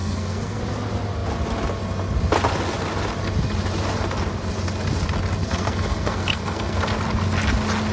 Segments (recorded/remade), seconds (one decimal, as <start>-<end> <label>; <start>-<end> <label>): 0.0-0.6 remade; 0.6-5.4 recorded; 5.4-6.8 remade; 6.8-7.9 recorded